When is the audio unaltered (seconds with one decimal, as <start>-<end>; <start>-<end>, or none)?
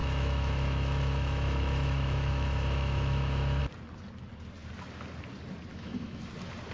3.6-5.7; 6.2-6.7